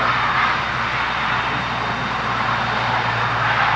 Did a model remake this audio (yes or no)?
no